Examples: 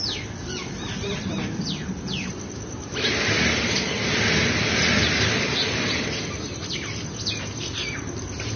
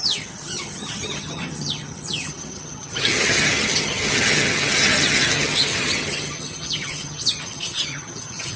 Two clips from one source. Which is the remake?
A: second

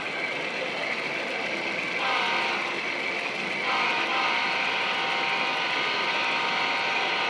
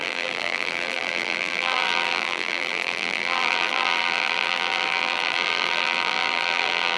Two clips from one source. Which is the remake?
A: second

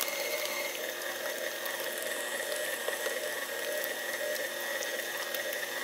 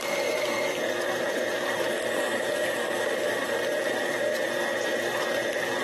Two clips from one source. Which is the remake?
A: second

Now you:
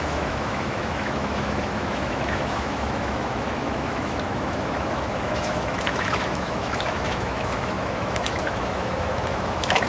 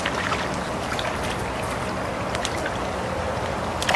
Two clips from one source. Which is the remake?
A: first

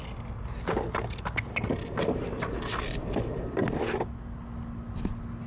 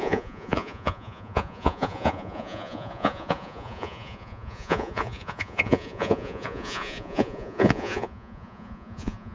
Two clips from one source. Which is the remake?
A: second